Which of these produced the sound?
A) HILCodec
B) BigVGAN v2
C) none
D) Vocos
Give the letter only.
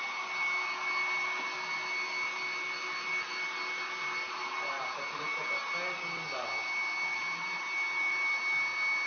C